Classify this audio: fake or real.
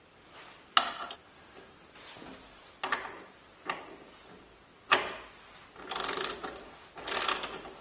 real